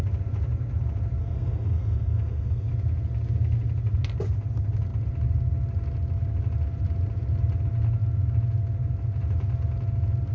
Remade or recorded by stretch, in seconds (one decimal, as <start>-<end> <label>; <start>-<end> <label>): 0.0-1.2 recorded; 1.2-2.7 remade; 2.7-10.3 recorded